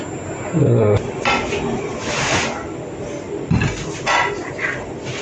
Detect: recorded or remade recorded